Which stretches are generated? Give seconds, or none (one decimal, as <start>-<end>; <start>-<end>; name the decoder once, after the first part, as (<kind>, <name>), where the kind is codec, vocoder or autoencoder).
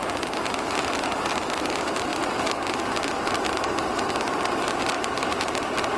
1.0-2.1 (vocoder, BigVGAN v2); 3.3-3.9; 5.1-6.0